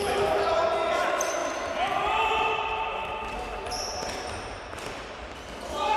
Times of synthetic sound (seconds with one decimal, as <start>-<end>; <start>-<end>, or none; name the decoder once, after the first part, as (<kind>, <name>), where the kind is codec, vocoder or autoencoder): none